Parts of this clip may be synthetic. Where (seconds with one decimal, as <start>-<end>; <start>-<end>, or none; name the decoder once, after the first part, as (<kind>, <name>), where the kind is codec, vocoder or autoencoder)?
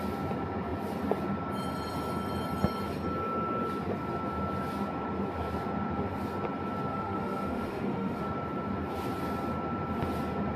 6.9-8.2 (autoencoder, DAC-VAE)